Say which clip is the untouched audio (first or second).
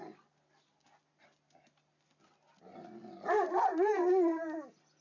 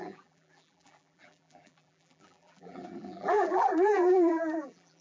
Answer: first